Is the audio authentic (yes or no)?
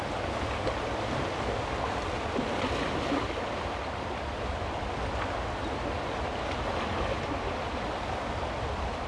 yes